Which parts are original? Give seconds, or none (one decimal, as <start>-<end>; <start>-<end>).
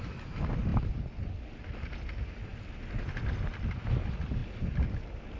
0.0-0.7; 1.2-5.4